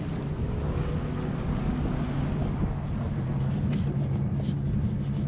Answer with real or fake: real